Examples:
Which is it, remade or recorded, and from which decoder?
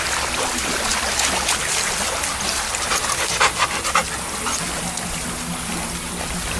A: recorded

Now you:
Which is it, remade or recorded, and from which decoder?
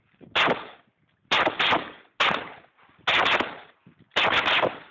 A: recorded